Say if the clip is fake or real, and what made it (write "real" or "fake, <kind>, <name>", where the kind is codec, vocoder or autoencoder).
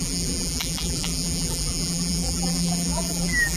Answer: fake, vocoder, BigVGAN v2